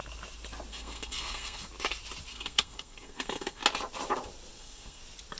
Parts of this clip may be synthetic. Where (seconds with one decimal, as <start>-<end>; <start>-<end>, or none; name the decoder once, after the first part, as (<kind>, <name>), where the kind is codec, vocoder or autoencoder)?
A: 0.7-1.7 (codec, SNAC); 2.3-3.6; 4.5-5.0